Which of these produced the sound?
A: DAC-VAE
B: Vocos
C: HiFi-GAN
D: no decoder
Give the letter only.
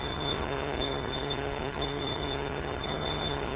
C